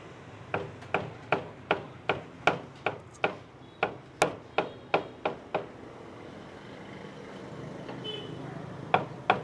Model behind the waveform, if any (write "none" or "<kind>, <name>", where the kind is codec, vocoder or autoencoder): none